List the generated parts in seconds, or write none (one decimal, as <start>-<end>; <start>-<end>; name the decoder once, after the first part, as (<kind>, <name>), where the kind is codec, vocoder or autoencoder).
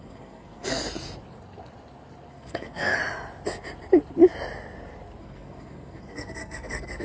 0.0-0.8 (codec, SNAC); 2.3-3.0; 5.2-7.0